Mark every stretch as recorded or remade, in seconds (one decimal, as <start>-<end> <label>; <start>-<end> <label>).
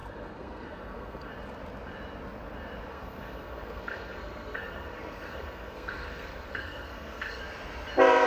0.0-1.3 remade; 1.3-2.9 recorded; 2.9-7.4 remade; 7.4-8.3 recorded